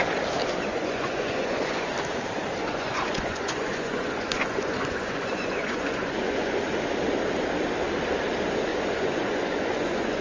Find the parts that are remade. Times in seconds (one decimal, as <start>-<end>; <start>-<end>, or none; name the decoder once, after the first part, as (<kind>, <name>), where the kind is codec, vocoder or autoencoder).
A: 0.7-1.9 (vocoder, Vocos); 2.6-6.6; 8.7-10.2